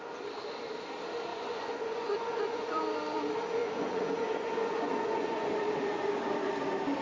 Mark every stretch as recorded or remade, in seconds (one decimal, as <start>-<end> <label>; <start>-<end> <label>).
0.0-1.3 recorded; 1.3-2.8 remade; 2.8-3.6 recorded; 3.6-5.5 remade; 5.5-7.0 recorded